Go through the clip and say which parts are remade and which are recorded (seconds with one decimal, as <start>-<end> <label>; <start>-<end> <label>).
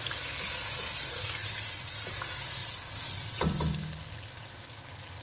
0.0-5.2 recorded